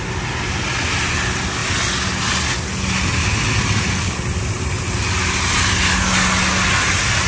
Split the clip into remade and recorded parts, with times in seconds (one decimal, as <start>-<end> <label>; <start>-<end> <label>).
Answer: 0.0-7.3 recorded